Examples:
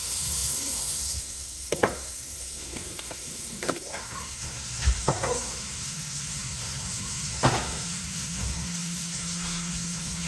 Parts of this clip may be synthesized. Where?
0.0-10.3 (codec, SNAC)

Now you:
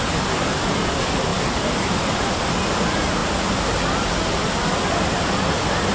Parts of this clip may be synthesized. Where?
none

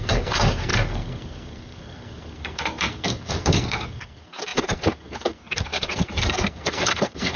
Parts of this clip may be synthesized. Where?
0.0-7.4 (codec, SNAC)

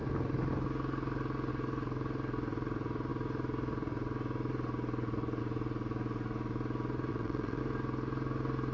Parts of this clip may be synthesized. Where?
7.1-7.6 (vocoder, WaveNeXt)

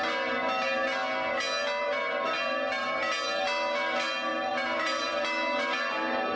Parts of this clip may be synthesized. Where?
4.3-5.2 (vocoder, BigVGAN v2)

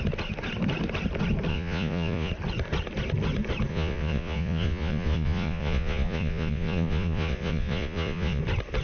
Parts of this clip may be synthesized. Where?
1.5-2.3 (vocoder, Vocos); 3.7-8.4

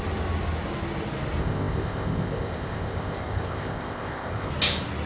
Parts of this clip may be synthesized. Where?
1.4-4.5 (codec, ZipCodec)